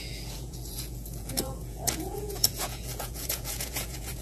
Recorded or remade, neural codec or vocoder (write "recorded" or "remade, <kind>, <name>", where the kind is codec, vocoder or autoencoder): remade, vocoder, Vocos